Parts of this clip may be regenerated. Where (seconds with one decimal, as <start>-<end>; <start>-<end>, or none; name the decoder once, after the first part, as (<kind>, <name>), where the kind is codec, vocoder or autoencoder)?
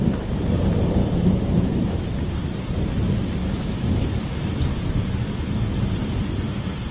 1.0-2.3 (autoencoder, DAC-VAE); 3.4-4.2